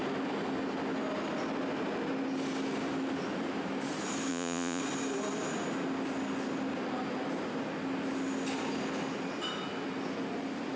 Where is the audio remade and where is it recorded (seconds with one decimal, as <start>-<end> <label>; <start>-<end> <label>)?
0.0-4.3 recorded; 4.3-4.8 remade; 4.8-10.8 recorded